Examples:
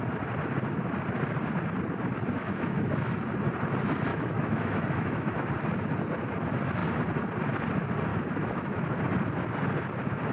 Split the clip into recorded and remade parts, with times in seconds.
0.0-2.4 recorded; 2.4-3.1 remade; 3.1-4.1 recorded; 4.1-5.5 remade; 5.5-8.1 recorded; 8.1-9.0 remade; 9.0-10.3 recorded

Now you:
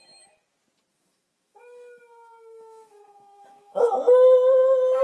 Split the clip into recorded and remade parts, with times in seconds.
0.0-0.9 recorded; 0.9-3.9 remade; 3.9-5.0 recorded

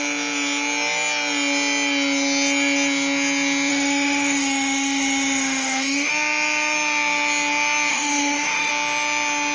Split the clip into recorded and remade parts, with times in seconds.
0.0-3.7 recorded; 3.7-6.1 remade; 6.1-7.9 recorded; 7.9-8.7 remade; 8.7-9.5 recorded